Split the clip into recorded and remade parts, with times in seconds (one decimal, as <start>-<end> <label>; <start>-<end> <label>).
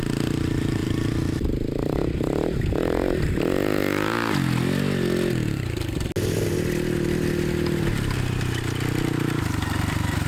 0.0-10.3 recorded